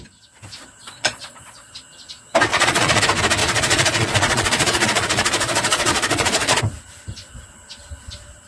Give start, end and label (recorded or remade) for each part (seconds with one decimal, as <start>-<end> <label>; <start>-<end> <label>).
0.0-0.8 recorded; 0.8-1.8 remade; 1.8-2.5 recorded; 2.5-3.0 remade; 3.0-3.4 recorded; 3.4-6.6 remade; 6.6-8.5 recorded